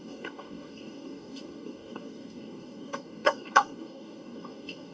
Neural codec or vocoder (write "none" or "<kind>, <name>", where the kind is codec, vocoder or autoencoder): codec, DAC